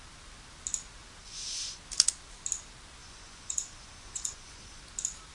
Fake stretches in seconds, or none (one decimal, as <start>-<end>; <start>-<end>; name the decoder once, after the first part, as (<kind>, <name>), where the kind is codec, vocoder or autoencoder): 1.2-1.8 (vocoder, Vocos); 3.0-4.8